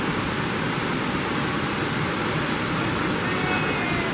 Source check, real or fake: real